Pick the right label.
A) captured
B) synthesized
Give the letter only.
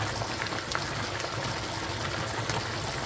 A